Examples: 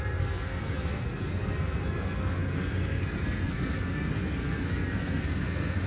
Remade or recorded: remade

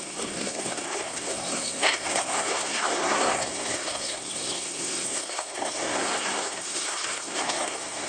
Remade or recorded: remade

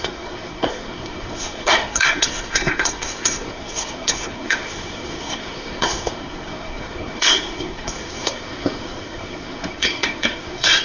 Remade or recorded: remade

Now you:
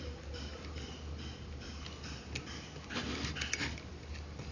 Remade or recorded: recorded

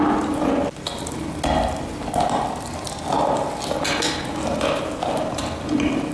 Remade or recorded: recorded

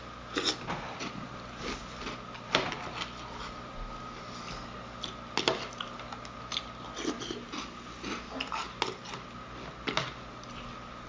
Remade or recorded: recorded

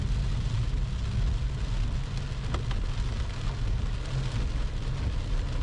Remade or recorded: recorded